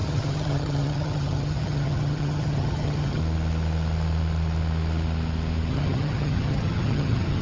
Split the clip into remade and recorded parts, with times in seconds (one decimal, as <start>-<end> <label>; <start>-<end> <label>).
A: 0.0-3.2 remade; 3.2-5.7 recorded; 5.7-7.4 remade